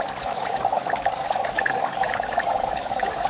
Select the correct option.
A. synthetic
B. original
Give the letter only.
A